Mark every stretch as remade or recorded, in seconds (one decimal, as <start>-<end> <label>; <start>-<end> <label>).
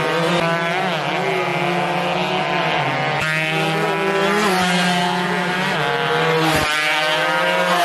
0.0-7.8 recorded